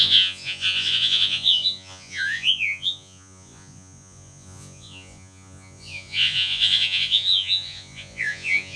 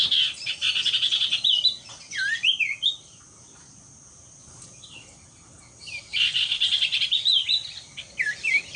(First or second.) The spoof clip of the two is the first